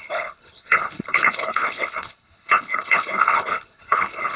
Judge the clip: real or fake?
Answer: fake